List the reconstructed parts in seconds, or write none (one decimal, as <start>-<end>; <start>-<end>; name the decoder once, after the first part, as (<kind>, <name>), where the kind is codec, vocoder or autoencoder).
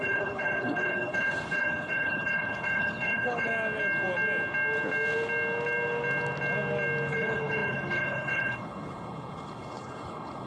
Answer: 0.0-3.5 (codec, HILCodec); 7.1-10.5